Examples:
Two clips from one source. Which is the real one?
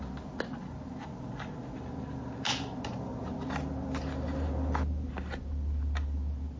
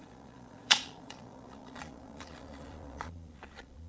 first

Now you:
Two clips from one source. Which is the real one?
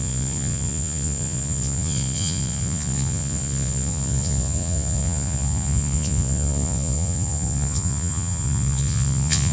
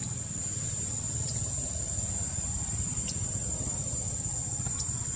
second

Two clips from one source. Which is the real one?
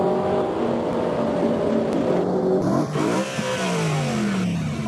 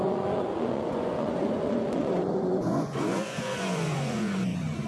first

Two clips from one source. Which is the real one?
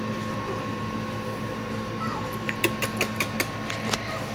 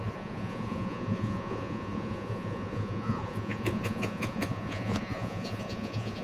first